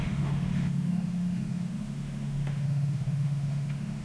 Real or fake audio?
fake